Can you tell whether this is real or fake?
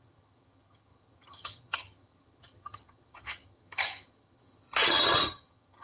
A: fake